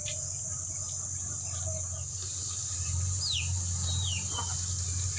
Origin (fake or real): real